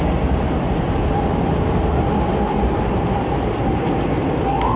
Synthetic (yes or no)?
no